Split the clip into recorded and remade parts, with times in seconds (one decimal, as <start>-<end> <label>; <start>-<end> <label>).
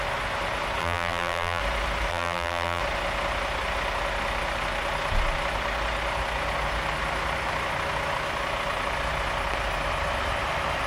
0.0-0.8 recorded; 0.8-1.6 remade; 1.6-2.1 recorded; 2.1-2.8 remade; 2.8-10.9 recorded